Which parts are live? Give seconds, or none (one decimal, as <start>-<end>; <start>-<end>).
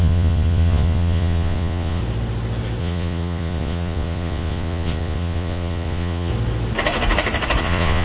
2.0-2.8; 6.3-7.6